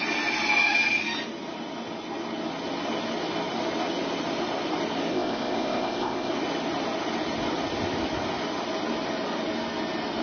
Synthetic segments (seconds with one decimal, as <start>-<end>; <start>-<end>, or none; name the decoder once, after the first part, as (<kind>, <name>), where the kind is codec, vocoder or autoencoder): 5.1-6.3 (codec, ZipCodec)